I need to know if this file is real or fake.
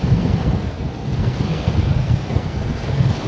fake